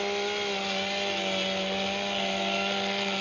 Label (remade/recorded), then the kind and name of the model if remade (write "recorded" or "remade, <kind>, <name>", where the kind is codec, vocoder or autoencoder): recorded